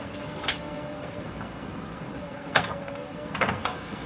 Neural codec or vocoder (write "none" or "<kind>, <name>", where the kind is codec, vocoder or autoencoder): codec, SNAC